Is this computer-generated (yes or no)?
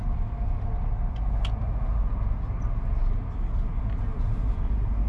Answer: no